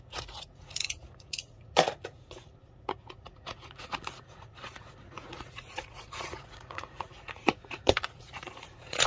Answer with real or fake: fake